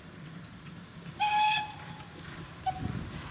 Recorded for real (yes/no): yes